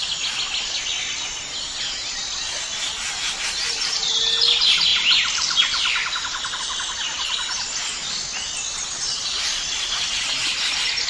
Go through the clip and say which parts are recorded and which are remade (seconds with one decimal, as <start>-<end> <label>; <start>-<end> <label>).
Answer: 0.0-11.1 recorded